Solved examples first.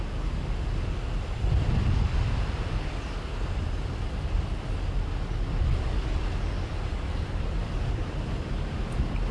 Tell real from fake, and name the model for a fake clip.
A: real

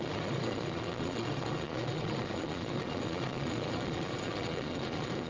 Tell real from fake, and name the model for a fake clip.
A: fake, vocoder, Vocos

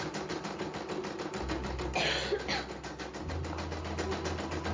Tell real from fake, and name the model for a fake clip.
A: real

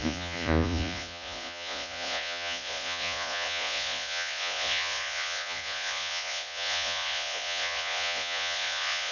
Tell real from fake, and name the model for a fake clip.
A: fake, vocoder, Vocos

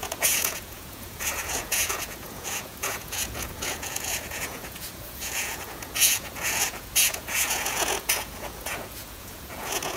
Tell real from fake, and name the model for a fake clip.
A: fake, vocoder, Vocos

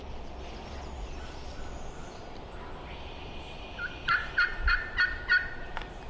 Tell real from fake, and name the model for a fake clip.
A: real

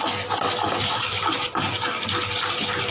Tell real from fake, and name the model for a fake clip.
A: real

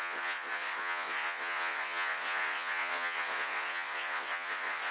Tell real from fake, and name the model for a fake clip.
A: fake, vocoder, Vocos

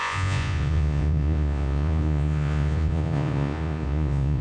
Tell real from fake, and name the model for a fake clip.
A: fake, vocoder, Vocos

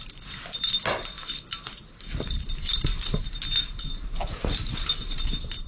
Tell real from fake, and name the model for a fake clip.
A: real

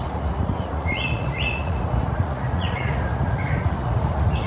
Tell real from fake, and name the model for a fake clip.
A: fake, vocoder, Vocos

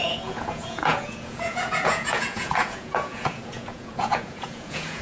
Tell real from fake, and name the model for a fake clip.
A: fake, vocoder, Vocos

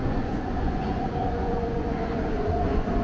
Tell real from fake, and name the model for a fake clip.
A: fake, vocoder, Vocos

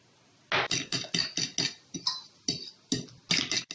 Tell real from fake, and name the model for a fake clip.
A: real